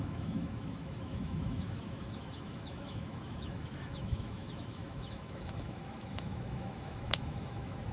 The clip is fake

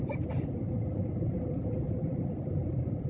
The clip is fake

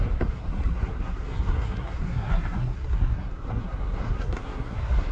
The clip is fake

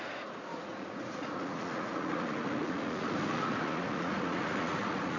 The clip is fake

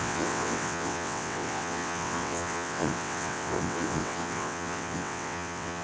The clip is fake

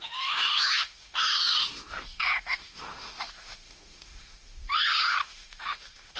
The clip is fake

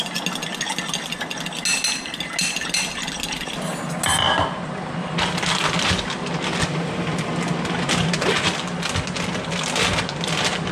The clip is real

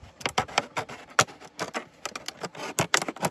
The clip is real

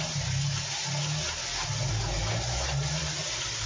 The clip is real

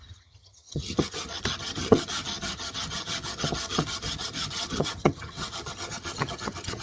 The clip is fake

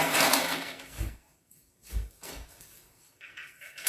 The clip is fake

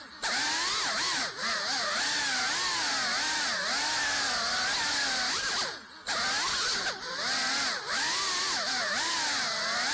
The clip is real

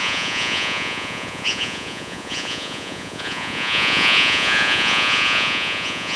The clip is fake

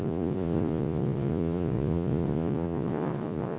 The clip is fake